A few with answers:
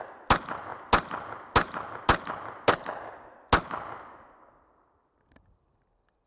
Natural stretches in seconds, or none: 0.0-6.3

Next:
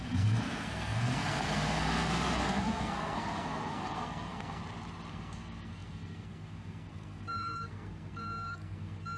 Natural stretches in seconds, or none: 4.6-5.1